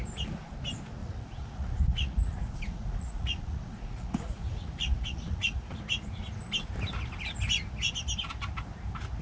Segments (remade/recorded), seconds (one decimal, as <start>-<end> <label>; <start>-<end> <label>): 0.0-1.0 recorded; 1.0-5.8 remade; 5.8-9.2 recorded